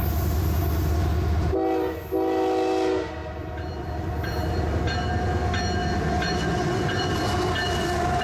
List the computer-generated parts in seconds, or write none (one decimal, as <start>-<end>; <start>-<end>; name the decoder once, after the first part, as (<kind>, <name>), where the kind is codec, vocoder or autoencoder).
3.2-4.7 (vocoder, BigVGAN v2); 5.8-8.2